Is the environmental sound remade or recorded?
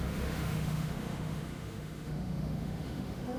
remade